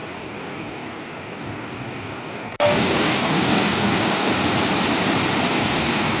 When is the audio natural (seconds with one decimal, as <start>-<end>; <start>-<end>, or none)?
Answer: 4.3-5.5